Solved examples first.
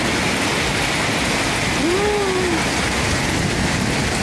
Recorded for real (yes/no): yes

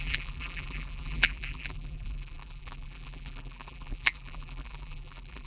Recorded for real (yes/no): no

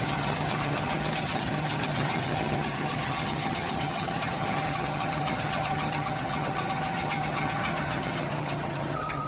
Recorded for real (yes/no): no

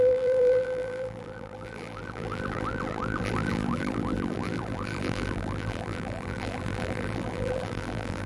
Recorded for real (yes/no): no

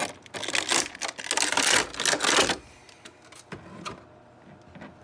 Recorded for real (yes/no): yes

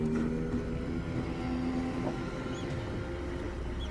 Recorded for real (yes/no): yes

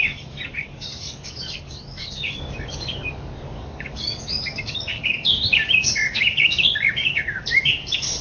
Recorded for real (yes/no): no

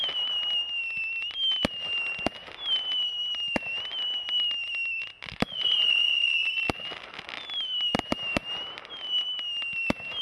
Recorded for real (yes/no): yes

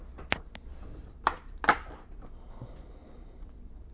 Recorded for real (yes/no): yes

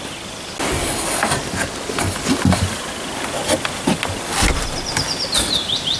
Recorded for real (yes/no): yes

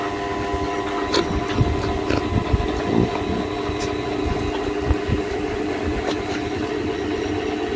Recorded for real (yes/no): yes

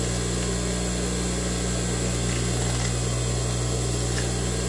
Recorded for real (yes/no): yes